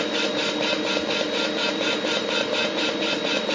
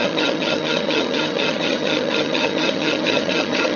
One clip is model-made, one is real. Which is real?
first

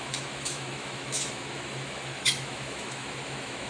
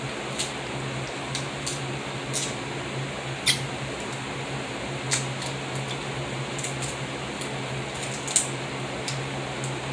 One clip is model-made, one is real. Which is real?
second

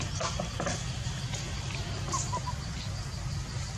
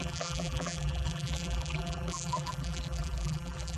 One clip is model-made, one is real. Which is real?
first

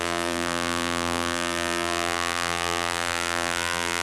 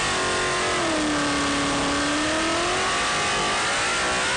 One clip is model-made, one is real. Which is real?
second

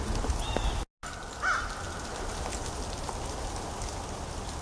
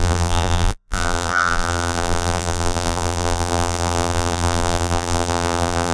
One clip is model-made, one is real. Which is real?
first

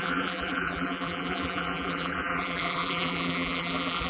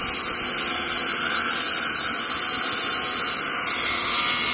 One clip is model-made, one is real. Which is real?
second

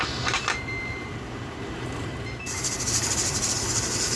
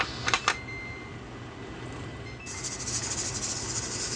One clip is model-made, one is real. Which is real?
second